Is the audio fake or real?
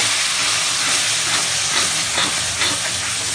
real